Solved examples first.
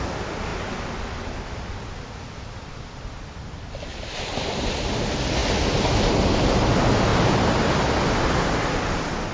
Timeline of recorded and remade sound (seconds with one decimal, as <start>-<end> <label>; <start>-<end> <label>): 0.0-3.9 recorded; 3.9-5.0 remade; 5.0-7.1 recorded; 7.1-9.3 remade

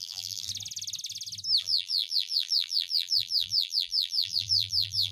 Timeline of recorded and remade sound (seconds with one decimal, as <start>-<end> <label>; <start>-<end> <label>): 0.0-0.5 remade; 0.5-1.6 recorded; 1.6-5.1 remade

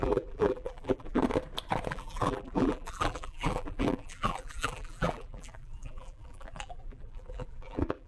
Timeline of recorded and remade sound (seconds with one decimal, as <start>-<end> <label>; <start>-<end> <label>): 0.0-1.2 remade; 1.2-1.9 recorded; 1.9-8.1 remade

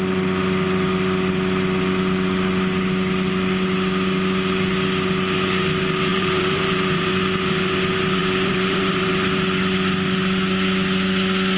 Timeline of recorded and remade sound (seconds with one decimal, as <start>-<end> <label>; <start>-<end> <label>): 0.0-6.1 recorded; 6.1-7.1 remade; 7.1-8.2 recorded; 8.2-9.1 remade; 9.1-11.6 recorded